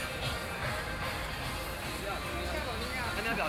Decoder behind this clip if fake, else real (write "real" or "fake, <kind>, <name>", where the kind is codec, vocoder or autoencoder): real